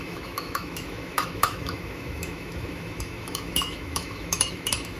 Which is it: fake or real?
fake